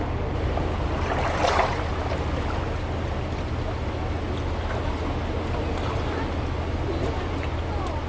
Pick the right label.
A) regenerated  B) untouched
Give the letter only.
B